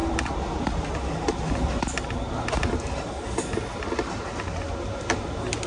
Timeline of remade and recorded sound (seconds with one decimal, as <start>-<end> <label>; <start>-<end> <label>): 0.0-5.7 recorded